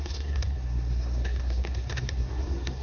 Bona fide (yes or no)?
no